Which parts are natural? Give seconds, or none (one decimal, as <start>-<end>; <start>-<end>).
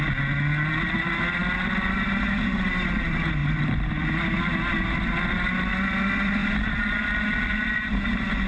0.0-3.4; 4.1-6.4; 7.9-8.5